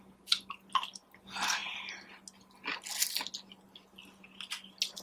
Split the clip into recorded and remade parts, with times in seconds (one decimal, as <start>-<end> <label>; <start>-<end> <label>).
0.0-5.0 recorded